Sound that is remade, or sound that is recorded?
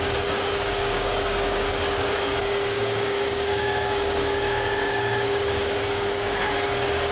remade